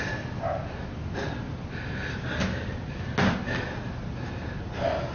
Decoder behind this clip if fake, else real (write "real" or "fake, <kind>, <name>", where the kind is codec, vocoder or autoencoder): real